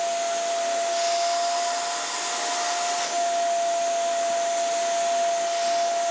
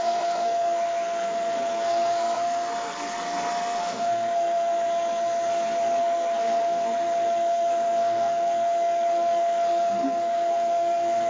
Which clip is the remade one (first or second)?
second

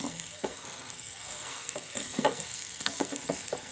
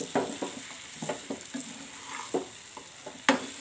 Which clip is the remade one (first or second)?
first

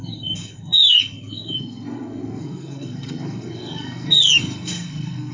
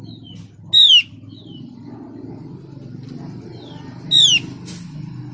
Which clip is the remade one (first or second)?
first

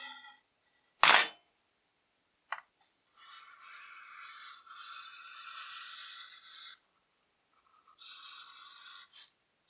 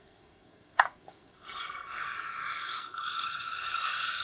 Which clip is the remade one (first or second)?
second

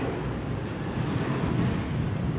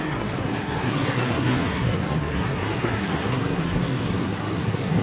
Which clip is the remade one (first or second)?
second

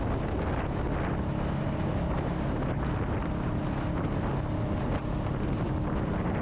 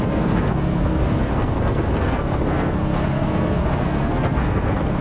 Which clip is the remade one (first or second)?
second